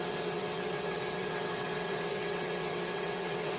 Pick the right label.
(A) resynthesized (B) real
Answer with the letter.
A